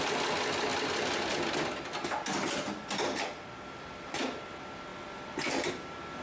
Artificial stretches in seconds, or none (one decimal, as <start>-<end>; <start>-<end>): none